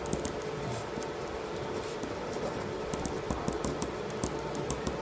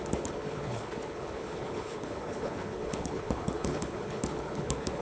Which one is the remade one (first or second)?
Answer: second